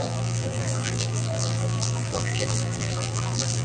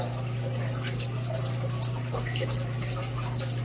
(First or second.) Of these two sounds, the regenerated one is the first